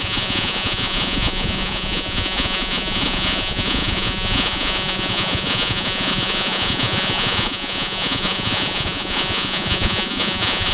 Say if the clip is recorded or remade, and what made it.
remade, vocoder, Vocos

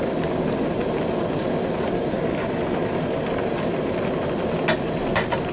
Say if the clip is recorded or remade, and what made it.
recorded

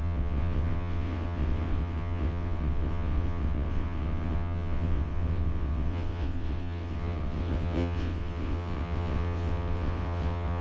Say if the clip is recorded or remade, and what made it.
remade, vocoder, WaveNeXt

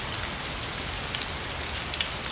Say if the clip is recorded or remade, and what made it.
recorded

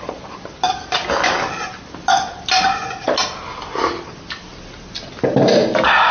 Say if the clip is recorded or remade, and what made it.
recorded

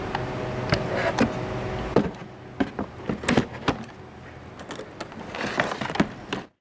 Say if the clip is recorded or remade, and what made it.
recorded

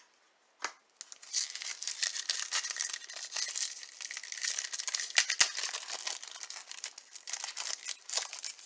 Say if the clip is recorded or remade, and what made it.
recorded